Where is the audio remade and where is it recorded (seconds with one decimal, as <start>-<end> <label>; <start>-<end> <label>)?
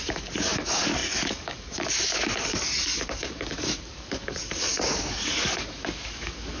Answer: 0.0-6.6 remade